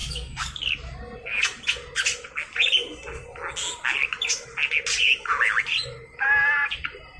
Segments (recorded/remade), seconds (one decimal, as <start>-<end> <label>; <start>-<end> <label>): 0.0-0.6 remade; 0.6-7.2 recorded